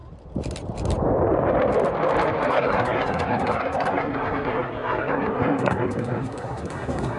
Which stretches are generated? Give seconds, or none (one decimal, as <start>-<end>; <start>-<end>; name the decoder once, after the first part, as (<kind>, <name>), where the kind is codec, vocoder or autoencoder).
2.5-7.2 (codec, SNAC)